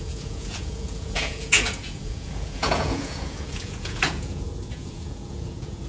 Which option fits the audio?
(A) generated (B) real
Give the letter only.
A